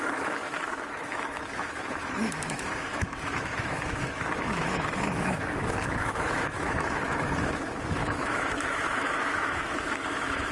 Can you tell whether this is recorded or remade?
remade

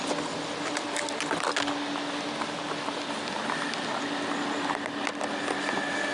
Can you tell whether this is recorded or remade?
recorded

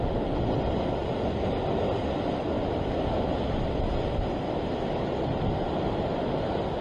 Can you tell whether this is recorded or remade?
recorded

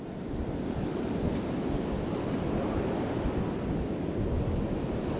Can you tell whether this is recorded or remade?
recorded